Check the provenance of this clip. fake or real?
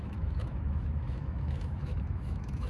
fake